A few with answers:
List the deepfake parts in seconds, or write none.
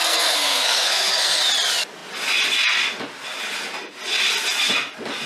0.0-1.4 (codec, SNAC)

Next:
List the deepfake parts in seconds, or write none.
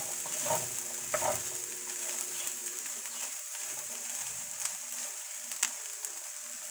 2.6-4.5 (vocoder, BigVGAN v2)